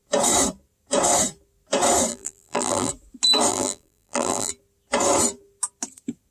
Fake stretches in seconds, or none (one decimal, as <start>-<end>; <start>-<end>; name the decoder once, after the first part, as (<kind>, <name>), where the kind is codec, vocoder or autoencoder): 2.1-2.9 (vocoder, BigVGAN v2); 3.5-4.5